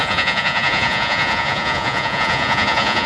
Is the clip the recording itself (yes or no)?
no